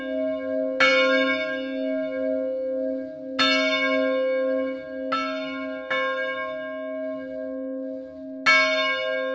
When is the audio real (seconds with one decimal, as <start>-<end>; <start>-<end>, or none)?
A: 0.0-9.3